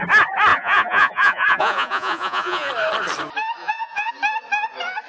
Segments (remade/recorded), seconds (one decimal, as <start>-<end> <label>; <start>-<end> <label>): 0.0-0.5 recorded; 0.5-2.7 remade; 2.7-3.6 recorded; 3.6-4.1 remade; 4.1-5.1 recorded